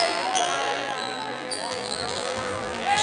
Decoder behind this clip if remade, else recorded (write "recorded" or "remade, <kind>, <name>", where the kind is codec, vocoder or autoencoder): remade, vocoder, BigVGAN v2